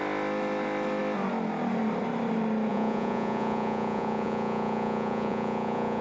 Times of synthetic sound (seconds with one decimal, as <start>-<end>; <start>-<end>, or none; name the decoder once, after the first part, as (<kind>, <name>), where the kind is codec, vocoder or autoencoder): 2.7-6.0 (vocoder, Vocos)